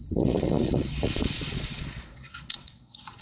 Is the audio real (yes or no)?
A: no